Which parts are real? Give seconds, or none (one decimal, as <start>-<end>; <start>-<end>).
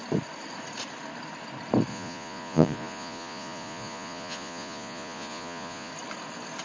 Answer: 0.0-1.9; 5.9-6.6